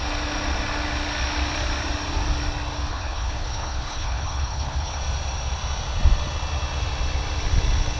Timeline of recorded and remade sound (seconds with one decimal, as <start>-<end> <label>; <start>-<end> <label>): 0.0-2.9 recorded; 2.9-5.0 remade; 5.0-8.0 recorded